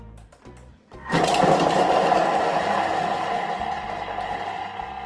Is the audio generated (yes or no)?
no